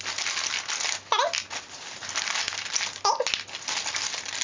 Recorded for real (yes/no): yes